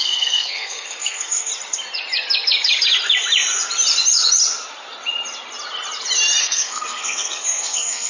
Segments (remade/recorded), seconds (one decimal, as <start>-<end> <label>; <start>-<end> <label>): 0.0-1.5 remade; 1.5-6.4 recorded; 6.4-8.1 remade